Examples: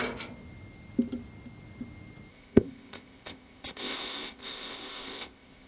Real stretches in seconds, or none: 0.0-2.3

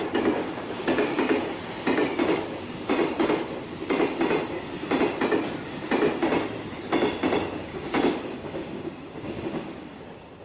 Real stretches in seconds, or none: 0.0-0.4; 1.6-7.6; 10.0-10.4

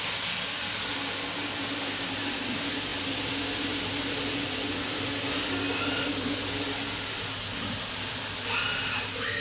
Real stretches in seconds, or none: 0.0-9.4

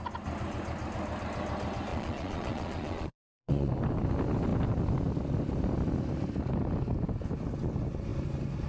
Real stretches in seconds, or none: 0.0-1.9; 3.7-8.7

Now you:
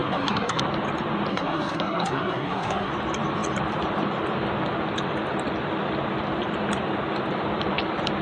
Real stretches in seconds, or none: 0.6-1.3; 2.9-8.2

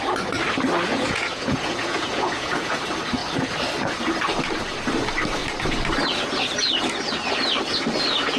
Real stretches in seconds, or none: 0.0-0.9; 2.7-8.4